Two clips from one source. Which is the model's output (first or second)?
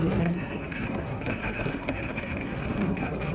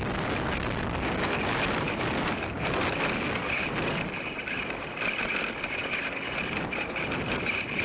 first